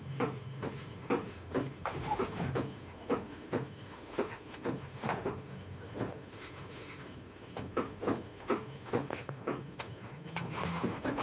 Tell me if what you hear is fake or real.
fake